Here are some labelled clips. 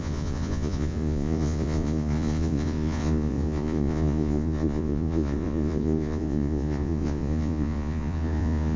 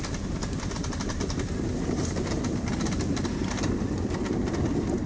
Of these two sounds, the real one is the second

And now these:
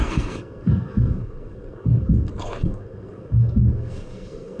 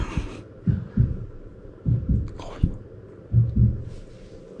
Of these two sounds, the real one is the second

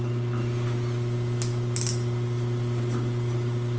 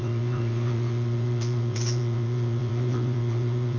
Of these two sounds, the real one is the first